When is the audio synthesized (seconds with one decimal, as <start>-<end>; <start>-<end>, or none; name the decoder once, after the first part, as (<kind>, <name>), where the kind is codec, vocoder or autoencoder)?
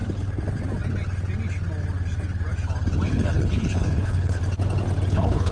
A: 3.1-4.4 (codec, HILCodec); 5.1-5.5